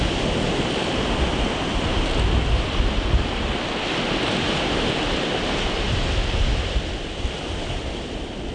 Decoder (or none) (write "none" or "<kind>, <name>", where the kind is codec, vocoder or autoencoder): none